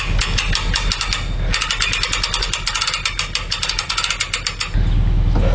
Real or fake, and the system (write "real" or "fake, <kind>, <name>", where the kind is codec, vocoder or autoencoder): real